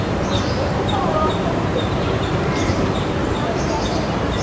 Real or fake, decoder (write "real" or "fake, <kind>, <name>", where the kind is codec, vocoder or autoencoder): fake, vocoder, BigVGAN v2